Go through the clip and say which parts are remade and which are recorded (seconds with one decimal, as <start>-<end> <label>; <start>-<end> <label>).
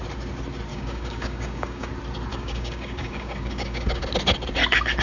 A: 0.0-0.7 recorded; 0.7-1.9 remade; 1.9-2.3 recorded; 2.3-4.0 remade; 4.0-5.0 recorded